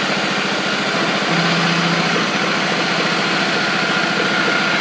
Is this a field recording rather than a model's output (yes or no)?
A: yes